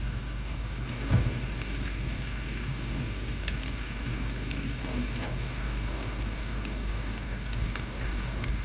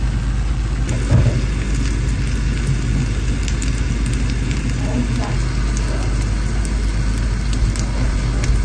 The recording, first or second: second